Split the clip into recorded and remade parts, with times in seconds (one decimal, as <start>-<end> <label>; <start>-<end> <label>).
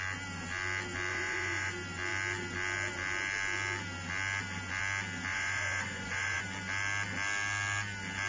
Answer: 0.0-1.1 recorded; 1.1-1.7 remade; 1.7-5.3 recorded; 5.3-6.4 remade; 6.4-8.3 recorded